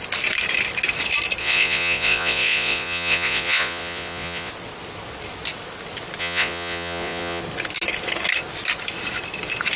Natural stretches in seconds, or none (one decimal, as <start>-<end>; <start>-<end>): 0.0-1.4; 4.5-6.2; 7.4-9.8